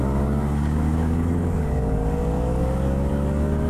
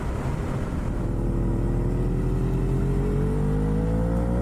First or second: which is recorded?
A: second